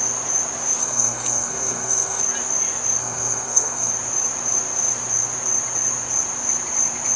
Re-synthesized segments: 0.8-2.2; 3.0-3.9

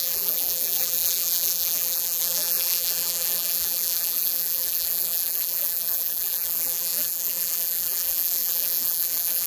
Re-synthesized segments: 0.0-9.5